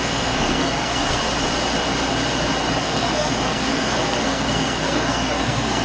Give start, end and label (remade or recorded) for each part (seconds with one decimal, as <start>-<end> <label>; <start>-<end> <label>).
0.0-1.2 remade; 1.2-2.8 recorded; 2.8-5.8 remade